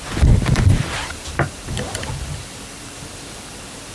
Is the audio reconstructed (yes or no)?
yes